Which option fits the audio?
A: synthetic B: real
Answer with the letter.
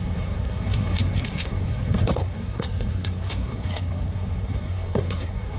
A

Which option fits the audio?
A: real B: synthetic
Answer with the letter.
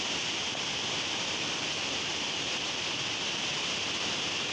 A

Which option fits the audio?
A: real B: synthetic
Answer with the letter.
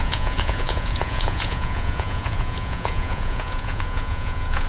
B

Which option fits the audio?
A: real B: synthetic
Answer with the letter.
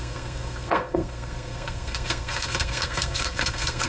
B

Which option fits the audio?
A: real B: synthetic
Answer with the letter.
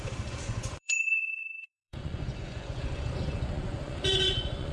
B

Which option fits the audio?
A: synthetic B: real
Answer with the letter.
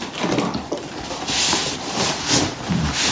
B